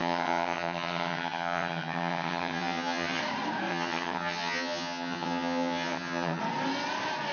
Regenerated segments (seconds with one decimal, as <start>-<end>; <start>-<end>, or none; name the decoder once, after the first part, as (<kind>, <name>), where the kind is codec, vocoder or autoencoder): 0.0-3.2 (vocoder, HiFi-GAN); 3.7-6.4